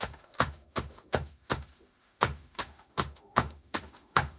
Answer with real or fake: fake